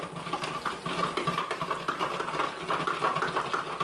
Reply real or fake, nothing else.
real